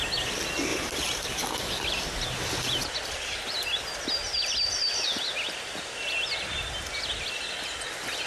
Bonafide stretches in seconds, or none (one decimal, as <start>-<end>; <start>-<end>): 0.0-0.7; 1.5-8.3